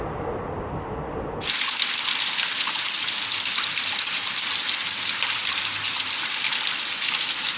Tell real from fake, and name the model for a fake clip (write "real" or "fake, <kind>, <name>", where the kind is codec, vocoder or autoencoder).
real